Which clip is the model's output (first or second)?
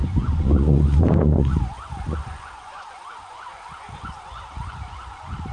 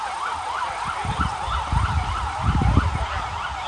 first